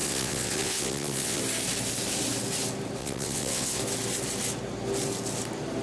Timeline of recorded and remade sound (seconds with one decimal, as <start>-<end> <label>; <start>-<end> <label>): 0.0-1.4 remade; 1.4-3.0 recorded; 3.0-3.8 remade; 3.8-5.8 recorded